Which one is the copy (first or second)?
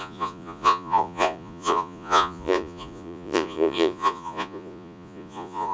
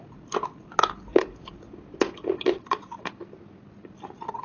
first